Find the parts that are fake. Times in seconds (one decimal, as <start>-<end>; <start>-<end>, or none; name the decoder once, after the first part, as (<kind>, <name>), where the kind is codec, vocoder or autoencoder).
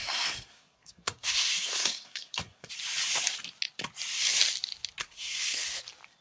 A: 0.0-2.7 (codec, SNAC); 5.0-5.8